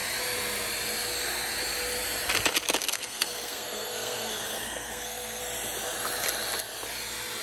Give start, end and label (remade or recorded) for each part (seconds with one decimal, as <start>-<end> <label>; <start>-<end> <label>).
0.0-2.8 recorded; 2.8-5.4 remade; 5.4-7.4 recorded